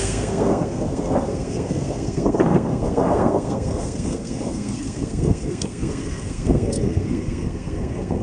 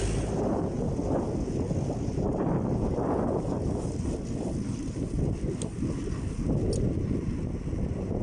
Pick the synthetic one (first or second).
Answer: first